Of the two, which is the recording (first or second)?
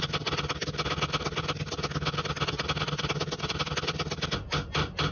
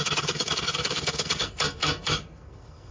first